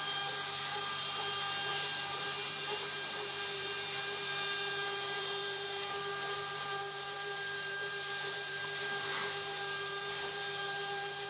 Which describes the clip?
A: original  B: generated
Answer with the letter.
B